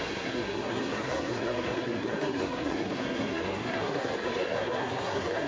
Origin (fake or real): fake